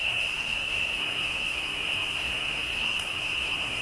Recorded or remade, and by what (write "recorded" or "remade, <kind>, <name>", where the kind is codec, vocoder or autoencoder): remade, codec, SNAC